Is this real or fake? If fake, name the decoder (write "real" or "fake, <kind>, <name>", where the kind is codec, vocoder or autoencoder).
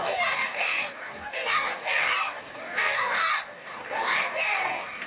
fake, codec, DAC